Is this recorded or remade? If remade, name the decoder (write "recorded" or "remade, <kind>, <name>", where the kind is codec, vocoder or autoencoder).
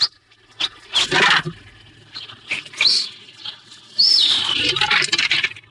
recorded